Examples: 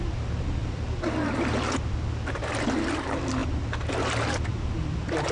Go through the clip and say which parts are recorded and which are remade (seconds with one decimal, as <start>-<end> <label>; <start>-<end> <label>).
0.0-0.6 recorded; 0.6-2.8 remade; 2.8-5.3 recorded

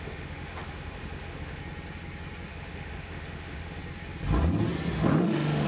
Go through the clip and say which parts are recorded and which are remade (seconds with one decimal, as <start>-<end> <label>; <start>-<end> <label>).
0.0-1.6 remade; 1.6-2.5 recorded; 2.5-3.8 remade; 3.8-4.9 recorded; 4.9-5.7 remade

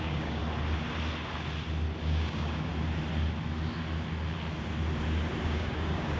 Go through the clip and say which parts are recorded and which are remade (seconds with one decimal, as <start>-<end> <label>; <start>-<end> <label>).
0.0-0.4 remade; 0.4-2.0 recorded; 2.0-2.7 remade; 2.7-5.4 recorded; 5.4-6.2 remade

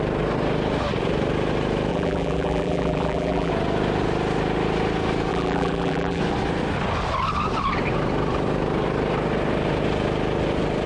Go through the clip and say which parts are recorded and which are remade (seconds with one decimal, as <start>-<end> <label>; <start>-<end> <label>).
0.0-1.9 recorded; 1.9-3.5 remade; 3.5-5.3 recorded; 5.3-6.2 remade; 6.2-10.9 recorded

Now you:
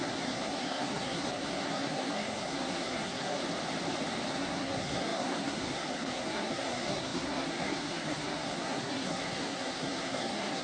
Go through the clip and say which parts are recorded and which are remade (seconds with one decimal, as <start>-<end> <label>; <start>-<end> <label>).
0.0-3.4 remade; 3.4-4.3 recorded; 4.3-10.6 remade